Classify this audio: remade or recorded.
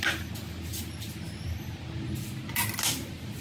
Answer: recorded